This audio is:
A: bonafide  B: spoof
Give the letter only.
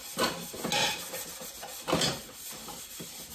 A